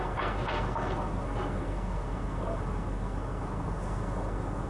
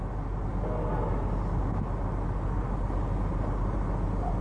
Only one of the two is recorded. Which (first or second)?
second